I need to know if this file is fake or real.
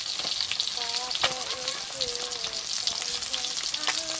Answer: real